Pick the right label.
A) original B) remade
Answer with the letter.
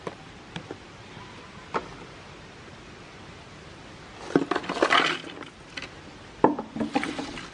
A